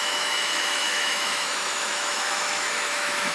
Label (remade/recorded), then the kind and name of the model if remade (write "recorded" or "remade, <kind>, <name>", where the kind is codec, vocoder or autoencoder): remade, autoencoder, DAC-VAE